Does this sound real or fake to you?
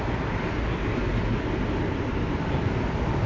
real